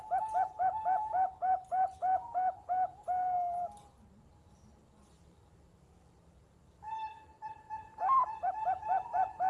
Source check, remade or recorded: remade